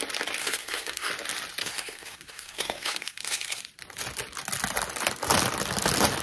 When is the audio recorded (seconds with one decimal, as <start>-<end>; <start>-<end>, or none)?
0.0-0.4; 1.1-1.6; 3.6-6.2